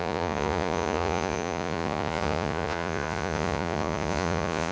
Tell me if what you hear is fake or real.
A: fake